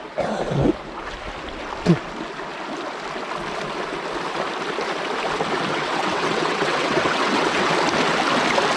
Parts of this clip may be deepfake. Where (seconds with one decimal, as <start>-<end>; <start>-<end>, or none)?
5.7-7.7